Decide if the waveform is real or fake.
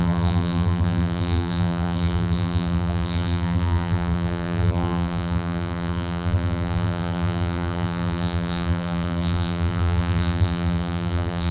fake